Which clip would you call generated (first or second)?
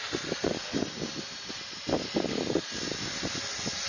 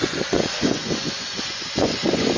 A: second